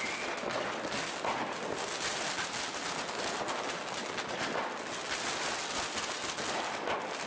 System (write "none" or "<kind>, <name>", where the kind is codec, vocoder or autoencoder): none